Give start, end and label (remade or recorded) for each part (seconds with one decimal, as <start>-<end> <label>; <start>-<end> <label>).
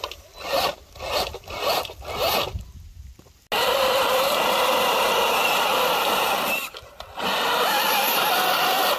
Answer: 0.0-9.0 recorded